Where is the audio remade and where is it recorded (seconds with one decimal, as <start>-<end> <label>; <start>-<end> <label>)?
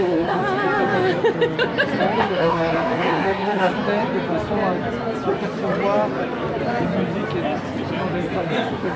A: 0.0-0.4 remade; 0.4-2.2 recorded; 2.2-3.7 remade; 3.7-8.3 recorded; 8.3-9.0 remade